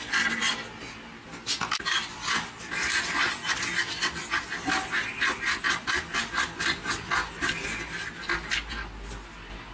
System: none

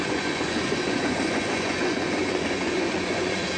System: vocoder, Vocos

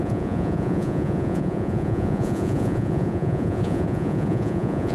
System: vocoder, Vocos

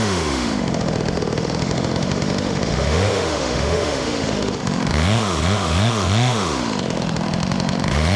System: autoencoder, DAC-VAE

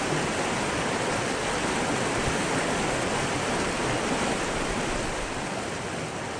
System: none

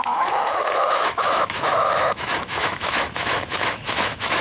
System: autoencoder, DAC-VAE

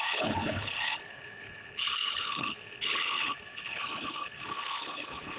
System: codec, HILCodec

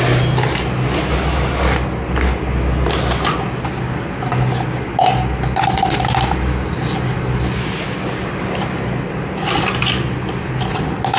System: none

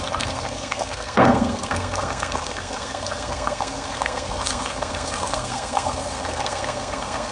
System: codec, SNAC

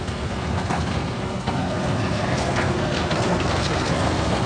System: codec, SNAC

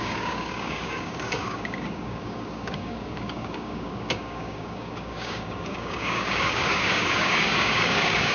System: codec, DAC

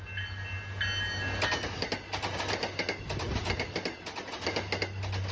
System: none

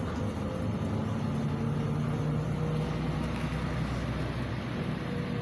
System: none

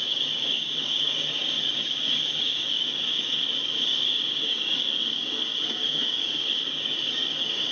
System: codec, DAC